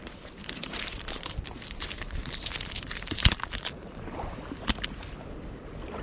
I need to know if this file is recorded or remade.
remade